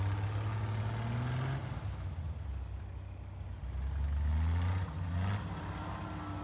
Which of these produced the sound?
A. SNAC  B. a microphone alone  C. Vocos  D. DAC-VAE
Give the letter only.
B